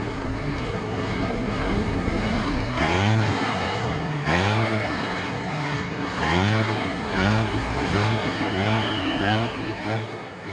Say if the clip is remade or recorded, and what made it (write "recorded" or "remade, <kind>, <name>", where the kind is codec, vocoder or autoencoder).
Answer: remade, codec, SNAC